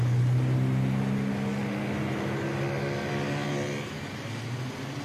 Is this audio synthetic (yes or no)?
no